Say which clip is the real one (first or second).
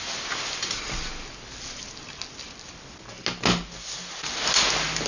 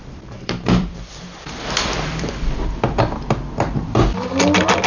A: first